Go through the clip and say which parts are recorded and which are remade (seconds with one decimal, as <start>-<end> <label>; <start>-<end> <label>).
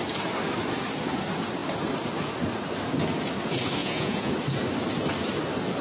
0.0-3.8 recorded; 3.8-4.3 remade; 4.3-5.8 recorded